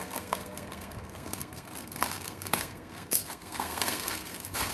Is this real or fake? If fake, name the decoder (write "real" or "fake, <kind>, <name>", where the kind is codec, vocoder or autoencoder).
fake, codec, SNAC